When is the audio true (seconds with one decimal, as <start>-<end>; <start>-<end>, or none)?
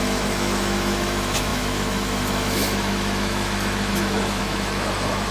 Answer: none